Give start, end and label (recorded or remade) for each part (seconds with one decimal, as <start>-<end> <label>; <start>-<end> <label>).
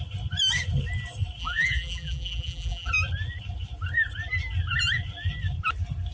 0.0-1.4 recorded; 1.4-2.9 remade; 2.9-6.1 recorded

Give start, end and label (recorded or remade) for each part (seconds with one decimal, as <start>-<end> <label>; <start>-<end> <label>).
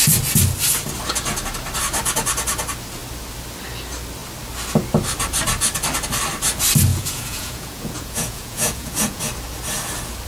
0.0-6.9 recorded; 6.9-9.2 remade; 9.2-10.3 recorded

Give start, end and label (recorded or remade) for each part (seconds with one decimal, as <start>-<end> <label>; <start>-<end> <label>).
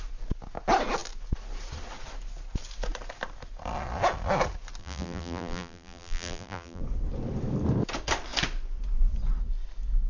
0.0-4.8 recorded; 4.8-6.8 remade; 6.8-10.1 recorded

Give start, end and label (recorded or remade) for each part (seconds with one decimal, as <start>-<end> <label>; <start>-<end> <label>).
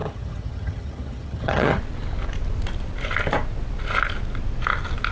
0.0-1.8 remade; 1.8-5.1 recorded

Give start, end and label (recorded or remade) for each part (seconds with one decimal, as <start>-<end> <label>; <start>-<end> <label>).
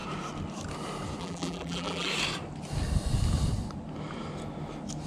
0.0-1.2 recorded; 1.2-2.1 remade; 2.1-5.1 recorded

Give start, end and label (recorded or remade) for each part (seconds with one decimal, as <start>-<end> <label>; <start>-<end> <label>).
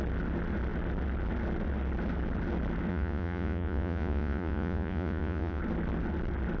0.0-2.9 recorded; 2.9-5.6 remade; 5.6-6.6 recorded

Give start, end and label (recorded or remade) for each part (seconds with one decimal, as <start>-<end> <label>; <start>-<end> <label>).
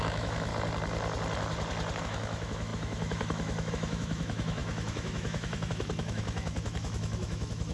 0.0-0.5 remade; 0.5-2.0 recorded; 2.0-7.7 remade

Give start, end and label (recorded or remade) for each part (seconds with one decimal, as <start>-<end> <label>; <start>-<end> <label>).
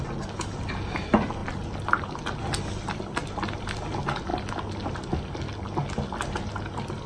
0.0-7.1 recorded